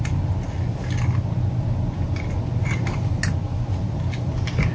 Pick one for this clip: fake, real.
real